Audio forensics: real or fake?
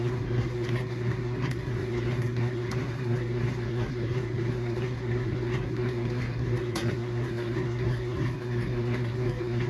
fake